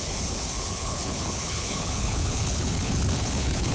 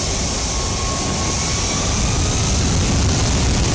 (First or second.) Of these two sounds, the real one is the second